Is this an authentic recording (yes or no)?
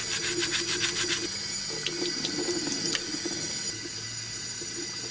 yes